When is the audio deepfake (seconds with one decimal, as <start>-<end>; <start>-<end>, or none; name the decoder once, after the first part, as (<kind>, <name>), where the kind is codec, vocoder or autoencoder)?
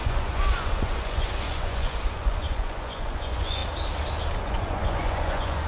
0.0-3.6 (vocoder, Vocos); 4.4-5.7